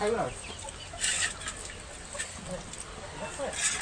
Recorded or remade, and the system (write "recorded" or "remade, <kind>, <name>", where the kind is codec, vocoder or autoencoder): recorded